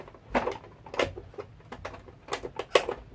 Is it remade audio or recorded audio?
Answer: recorded